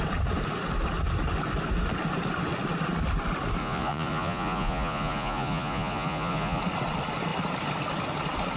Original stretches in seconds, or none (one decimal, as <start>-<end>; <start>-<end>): 0.0-3.6; 6.6-8.6